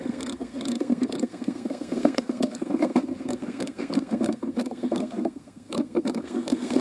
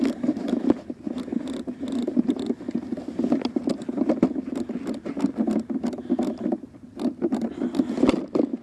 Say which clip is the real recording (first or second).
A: second